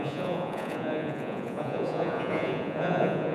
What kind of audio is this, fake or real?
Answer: fake